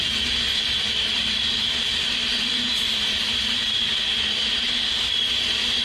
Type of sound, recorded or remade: remade